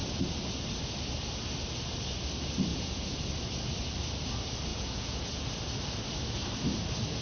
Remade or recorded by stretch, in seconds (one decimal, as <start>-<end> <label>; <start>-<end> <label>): 0.0-2.7 recorded; 2.7-3.3 remade; 3.3-4.7 recorded; 4.7-5.6 remade; 5.6-7.2 recorded